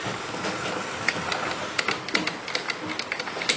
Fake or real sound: real